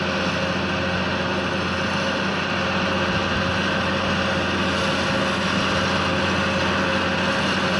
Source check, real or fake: real